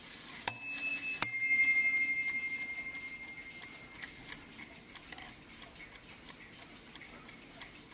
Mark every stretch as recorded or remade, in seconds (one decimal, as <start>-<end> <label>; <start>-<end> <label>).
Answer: 0.0-7.9 recorded